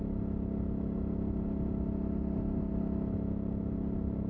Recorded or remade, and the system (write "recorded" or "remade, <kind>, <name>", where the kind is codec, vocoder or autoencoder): recorded